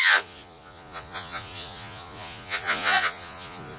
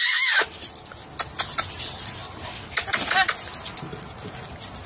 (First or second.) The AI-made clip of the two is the first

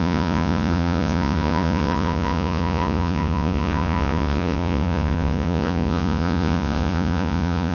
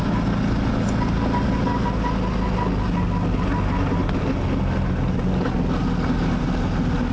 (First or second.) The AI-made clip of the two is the first